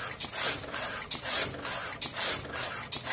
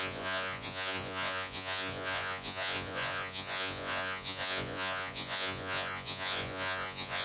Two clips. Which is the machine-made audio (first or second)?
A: second